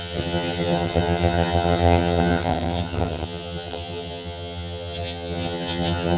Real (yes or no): no